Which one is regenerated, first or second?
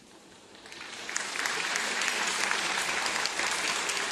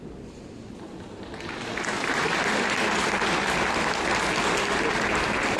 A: first